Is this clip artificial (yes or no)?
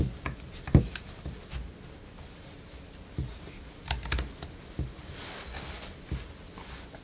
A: no